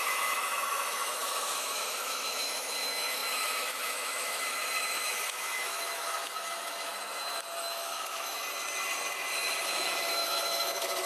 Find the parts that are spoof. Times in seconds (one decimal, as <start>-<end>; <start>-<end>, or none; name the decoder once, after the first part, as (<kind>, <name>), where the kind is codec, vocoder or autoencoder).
0.0-6.9 (autoencoder, DAC-VAE); 7.6-8.4; 9.6-11.1